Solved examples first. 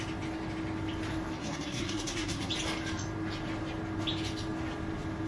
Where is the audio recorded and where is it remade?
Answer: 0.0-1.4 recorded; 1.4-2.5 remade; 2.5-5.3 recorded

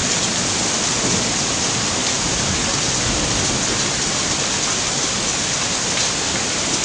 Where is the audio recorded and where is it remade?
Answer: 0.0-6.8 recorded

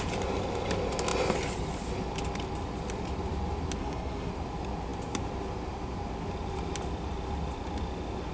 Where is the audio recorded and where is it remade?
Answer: 0.0-3.8 recorded; 3.8-4.3 remade; 4.3-8.3 recorded

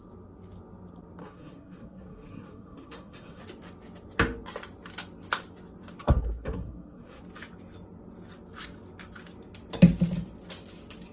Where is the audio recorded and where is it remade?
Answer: 0.0-1.2 recorded; 1.2-3.4 remade; 3.4-6.0 recorded; 6.0-7.2 remade; 7.2-11.1 recorded

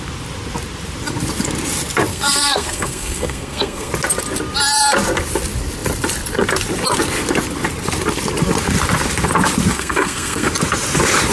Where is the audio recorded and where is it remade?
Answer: 0.0-2.1 recorded; 2.1-3.9 remade; 3.9-9.7 recorded; 9.7-10.5 remade; 10.5-11.3 recorded